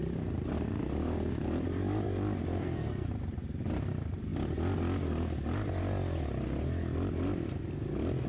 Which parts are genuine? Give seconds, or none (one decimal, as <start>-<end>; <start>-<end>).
0.0-2.6; 3.1-8.3

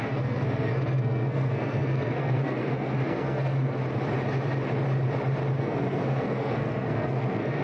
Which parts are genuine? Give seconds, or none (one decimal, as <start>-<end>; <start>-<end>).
3.8-5.6

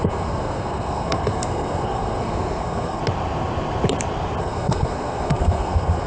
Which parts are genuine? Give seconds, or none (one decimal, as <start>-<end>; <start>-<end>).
3.0-4.4

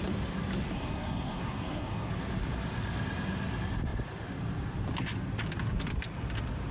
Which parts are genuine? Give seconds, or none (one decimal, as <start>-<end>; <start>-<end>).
0.0-0.7; 2.1-6.7

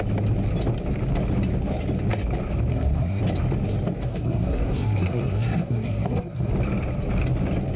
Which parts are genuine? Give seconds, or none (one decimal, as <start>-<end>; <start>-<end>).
0.0-2.7; 3.2-4.1; 6.5-7.8

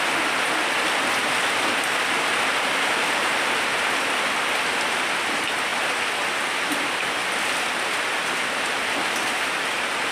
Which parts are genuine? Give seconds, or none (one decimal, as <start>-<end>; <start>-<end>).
0.0-10.1

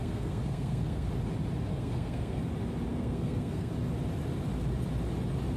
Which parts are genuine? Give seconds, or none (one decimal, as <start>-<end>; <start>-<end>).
1.1-1.7; 2.4-2.9; 3.7-5.6

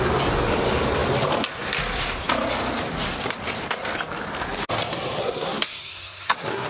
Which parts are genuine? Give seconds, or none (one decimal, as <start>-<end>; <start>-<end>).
0.0-5.2